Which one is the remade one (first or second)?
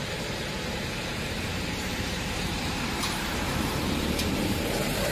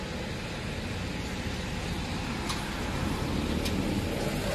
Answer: first